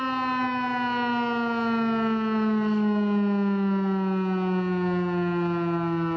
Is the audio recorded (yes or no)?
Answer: yes